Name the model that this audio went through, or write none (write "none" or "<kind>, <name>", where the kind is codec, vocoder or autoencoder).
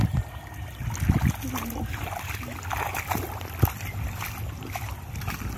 none